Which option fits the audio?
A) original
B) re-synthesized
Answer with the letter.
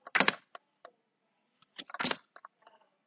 A